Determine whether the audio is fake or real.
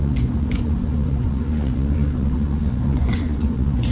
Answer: fake